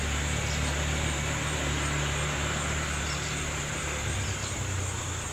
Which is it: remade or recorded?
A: recorded